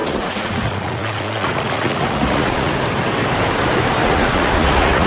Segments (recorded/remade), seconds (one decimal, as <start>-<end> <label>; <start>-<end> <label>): 0.0-2.7 remade; 2.7-4.0 recorded; 4.0-5.1 remade

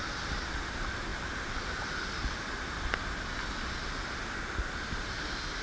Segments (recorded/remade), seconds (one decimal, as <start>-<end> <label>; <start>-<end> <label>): 0.0-5.6 recorded